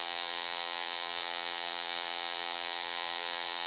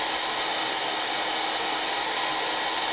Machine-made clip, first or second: first